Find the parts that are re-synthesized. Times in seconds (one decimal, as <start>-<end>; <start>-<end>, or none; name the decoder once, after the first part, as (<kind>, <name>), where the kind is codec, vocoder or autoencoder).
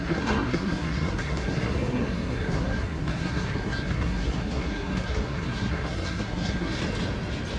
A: 0.0-6.8 (codec, SNAC)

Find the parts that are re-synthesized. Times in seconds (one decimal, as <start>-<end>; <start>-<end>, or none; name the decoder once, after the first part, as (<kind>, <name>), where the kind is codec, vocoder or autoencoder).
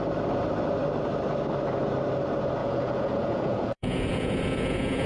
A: 2.6-5.1 (vocoder, Vocos)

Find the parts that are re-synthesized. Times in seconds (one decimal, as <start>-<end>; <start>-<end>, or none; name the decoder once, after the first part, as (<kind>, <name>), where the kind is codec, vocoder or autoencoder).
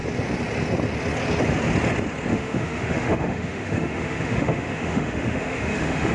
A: 2.3-6.1 (autoencoder, DAC-VAE)